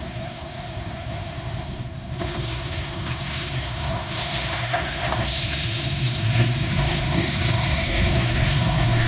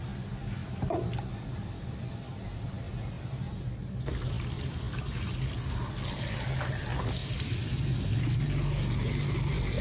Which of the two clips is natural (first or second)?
second